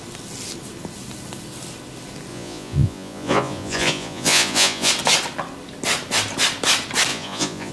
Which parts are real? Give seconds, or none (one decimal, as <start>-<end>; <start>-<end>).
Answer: 0.0-2.3; 4.9-7.1